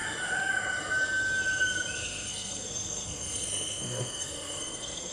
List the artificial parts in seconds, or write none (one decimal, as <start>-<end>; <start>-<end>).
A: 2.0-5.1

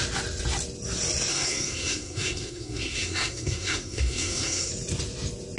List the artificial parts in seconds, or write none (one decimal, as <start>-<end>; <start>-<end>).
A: 1.3-4.7

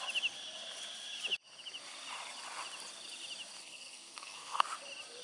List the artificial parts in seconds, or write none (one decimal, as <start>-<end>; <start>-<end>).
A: 3.6-4.6

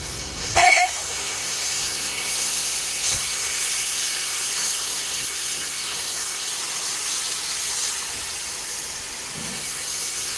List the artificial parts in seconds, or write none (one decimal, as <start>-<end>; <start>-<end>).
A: 0.0-6.5; 9.5-10.4

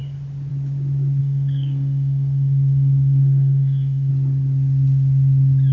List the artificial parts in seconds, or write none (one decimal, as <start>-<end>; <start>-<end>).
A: 1.2-4.1

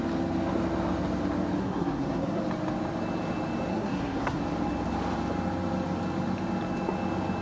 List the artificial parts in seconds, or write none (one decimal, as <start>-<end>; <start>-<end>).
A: 1.6-2.4; 3.7-4.4